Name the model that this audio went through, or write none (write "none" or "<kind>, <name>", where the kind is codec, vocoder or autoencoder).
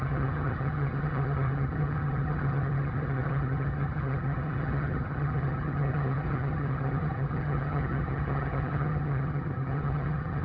vocoder, HiFi-GAN